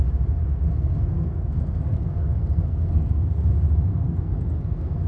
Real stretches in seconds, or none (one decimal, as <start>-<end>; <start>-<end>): 0.0-0.4; 3.5-3.9